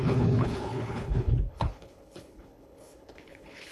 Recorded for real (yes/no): no